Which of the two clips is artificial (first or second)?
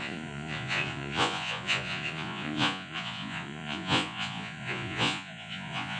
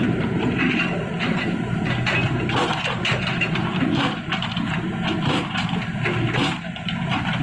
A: first